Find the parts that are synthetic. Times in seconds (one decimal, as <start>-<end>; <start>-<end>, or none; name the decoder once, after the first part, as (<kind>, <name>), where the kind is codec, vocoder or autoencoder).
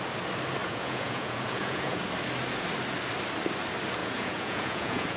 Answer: 0.6-2.0 (vocoder, Vocos); 4.0-5.2